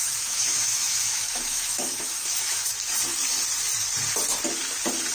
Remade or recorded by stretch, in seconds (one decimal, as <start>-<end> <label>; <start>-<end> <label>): 0.0-2.7 remade; 2.7-5.1 recorded